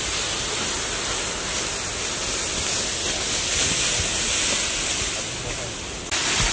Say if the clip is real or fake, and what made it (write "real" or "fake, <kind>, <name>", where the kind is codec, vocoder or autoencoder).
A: real